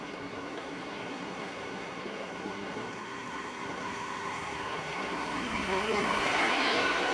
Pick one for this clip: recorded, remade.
remade